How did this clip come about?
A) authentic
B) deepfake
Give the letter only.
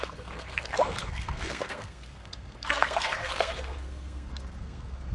B